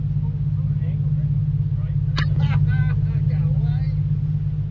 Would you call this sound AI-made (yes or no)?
no